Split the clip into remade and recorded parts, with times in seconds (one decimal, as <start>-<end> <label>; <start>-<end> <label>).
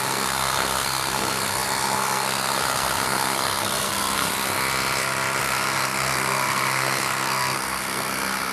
0.0-4.3 remade; 4.3-5.4 recorded; 5.4-8.5 remade